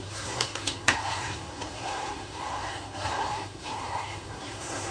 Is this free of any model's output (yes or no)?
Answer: no